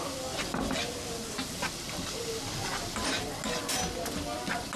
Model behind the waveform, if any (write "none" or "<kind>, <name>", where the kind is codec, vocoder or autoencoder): none